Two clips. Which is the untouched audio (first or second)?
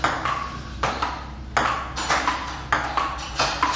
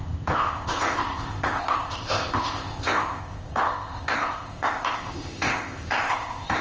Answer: first